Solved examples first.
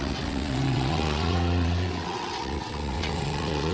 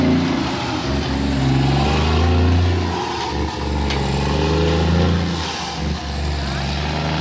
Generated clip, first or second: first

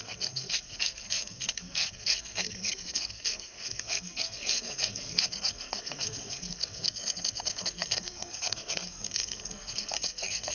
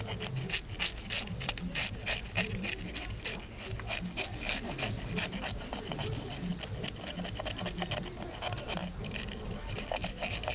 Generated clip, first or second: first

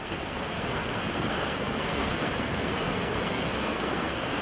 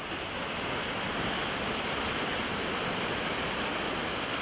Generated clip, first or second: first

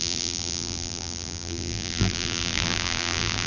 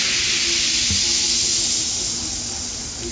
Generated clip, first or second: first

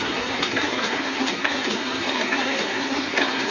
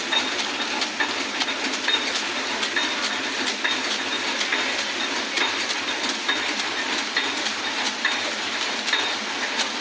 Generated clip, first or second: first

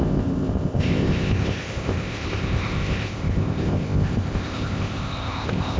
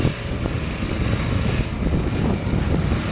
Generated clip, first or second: first